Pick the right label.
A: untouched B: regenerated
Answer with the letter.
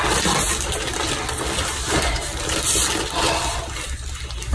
A